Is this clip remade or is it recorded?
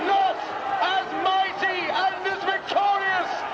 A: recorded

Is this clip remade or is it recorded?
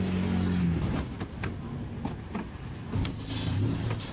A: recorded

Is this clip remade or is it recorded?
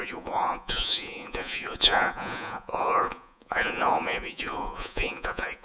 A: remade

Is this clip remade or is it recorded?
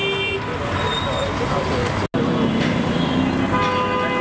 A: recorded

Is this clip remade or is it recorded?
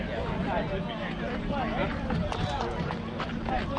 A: recorded